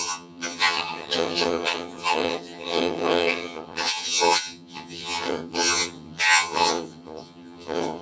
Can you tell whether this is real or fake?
fake